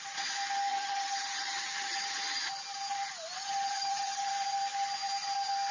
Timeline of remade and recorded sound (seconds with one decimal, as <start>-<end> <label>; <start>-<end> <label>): 0.0-0.7 recorded; 0.7-2.1 remade; 2.1-3.4 recorded; 3.4-4.3 remade; 4.3-5.7 recorded